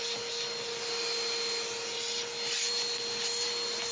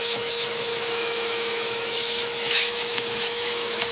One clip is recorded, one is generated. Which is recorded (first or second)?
first